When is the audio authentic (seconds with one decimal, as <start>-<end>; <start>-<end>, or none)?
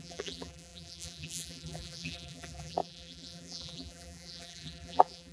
none